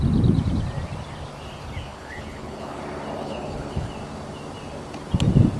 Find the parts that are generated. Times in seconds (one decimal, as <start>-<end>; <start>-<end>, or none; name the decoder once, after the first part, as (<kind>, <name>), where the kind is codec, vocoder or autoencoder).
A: 1.9-2.8 (codec, HILCodec); 3.2-3.9